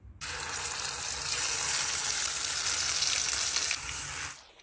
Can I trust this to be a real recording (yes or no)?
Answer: yes